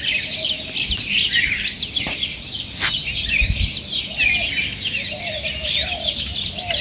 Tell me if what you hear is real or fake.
real